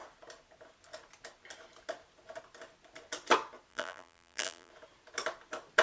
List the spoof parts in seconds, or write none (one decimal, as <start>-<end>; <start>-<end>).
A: 3.7-4.7